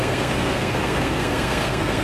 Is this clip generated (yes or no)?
yes